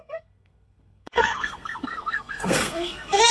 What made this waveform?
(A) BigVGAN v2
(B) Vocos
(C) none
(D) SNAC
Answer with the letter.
D